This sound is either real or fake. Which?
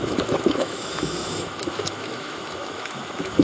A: fake